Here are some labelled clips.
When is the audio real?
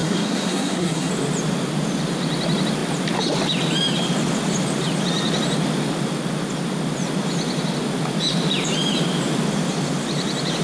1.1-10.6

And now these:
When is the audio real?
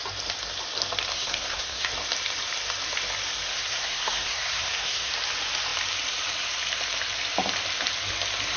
0.0-1.1; 1.9-3.5; 5.1-8.6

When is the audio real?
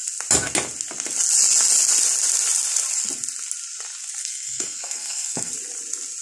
0.0-4.2; 5.5-6.2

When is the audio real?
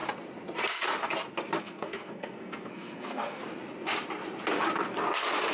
0.0-1.6; 3.4-5.5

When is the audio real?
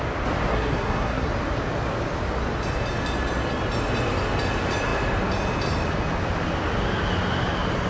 0.0-0.5; 1.3-7.9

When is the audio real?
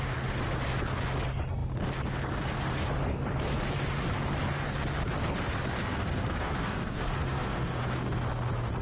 0.0-5.8; 7.8-8.8